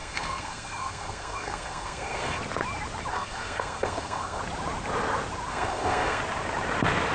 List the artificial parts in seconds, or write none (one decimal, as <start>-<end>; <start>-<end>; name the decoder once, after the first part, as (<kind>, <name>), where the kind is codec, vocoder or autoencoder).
0.0-2.4 (codec, SNAC); 3.1-4.4; 5.5-6.2